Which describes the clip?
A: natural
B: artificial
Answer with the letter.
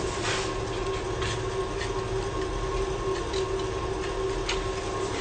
A